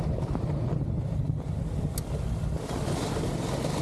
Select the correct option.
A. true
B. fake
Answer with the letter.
A